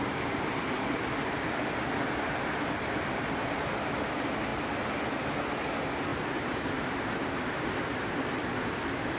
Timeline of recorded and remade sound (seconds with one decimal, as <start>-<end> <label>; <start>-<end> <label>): 0.0-9.2 recorded